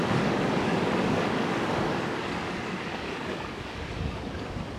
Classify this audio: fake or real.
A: fake